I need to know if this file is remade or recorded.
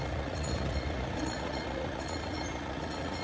remade